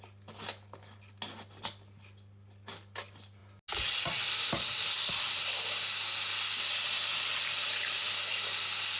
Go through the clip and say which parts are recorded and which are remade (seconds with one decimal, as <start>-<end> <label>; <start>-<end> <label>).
0.0-9.0 recorded